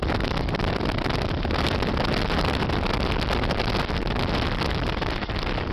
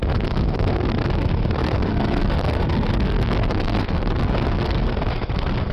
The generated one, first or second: second